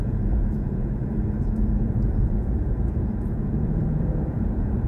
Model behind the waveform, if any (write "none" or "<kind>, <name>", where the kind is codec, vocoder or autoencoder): vocoder, Vocos